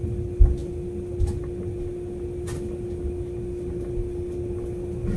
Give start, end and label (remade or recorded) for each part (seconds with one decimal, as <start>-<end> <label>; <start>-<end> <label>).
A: 0.0-5.2 recorded